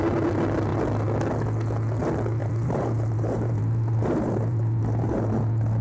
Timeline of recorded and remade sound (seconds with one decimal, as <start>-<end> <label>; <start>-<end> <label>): 0.0-2.4 recorded; 2.4-5.3 remade; 5.3-5.8 recorded